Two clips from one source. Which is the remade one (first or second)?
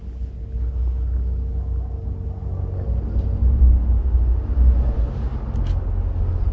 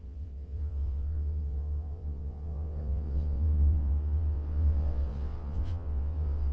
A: second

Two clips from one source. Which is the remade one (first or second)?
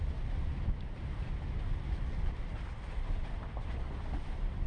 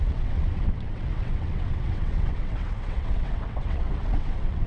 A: second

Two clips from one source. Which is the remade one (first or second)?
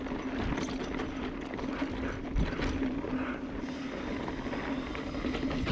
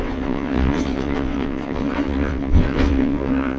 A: second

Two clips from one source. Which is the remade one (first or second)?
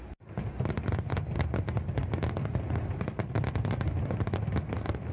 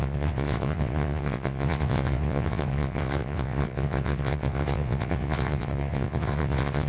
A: second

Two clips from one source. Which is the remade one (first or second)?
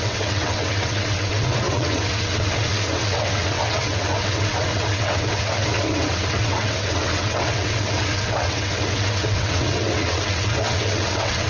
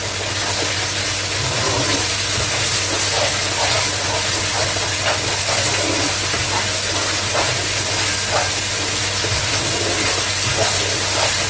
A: first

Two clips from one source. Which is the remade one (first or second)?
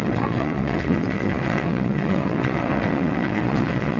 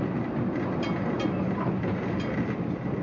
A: first